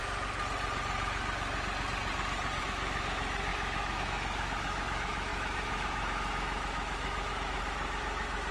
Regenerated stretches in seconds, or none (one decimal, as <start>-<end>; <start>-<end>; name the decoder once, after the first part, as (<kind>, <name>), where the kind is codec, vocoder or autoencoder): 2.6-8.5 (autoencoder, DAC-VAE)